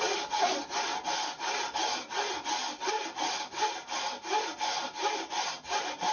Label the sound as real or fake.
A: real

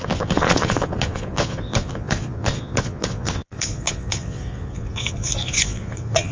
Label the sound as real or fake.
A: fake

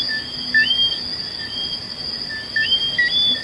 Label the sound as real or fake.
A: real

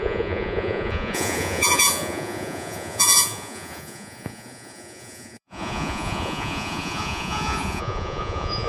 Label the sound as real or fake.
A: fake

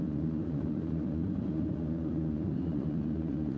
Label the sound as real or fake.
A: fake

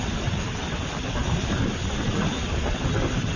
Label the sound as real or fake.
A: real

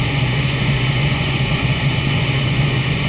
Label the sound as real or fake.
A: fake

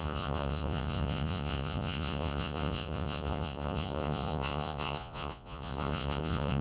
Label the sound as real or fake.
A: fake